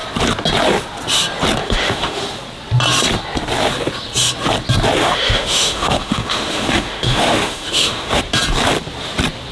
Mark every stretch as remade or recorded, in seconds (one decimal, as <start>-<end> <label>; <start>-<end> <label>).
0.0-1.6 recorded; 1.6-2.2 remade; 2.2-5.0 recorded; 5.0-8.2 remade; 8.2-9.5 recorded